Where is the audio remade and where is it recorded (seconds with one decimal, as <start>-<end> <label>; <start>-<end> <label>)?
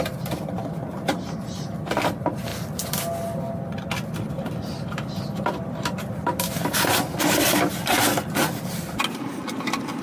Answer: 0.0-10.0 recorded